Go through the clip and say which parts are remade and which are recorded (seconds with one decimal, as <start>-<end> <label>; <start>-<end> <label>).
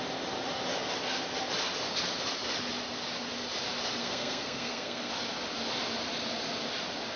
0.0-4.0 recorded; 4.0-5.1 remade; 5.1-7.2 recorded